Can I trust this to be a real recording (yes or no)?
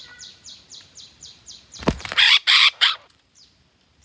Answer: no